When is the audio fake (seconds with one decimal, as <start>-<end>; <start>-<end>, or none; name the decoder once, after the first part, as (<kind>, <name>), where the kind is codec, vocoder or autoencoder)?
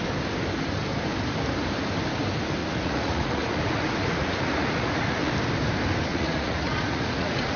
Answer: 2.6-5.3 (vocoder, Vocos); 6.1-7.6